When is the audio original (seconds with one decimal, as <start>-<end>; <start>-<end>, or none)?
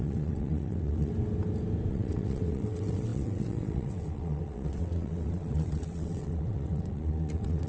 1.1-1.9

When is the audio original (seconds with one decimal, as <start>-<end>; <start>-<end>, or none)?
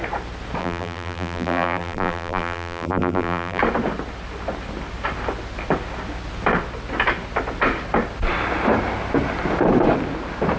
0.0-0.6; 3.6-10.6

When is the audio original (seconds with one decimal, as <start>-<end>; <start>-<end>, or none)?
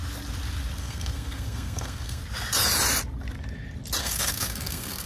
0.0-0.8; 2.2-4.0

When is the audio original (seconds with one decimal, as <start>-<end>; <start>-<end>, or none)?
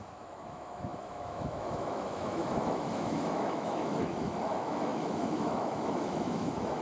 none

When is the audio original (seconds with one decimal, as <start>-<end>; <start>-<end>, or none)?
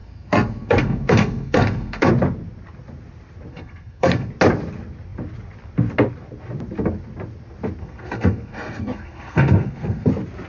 2.1-3.5; 4.3-7.8; 10.1-10.5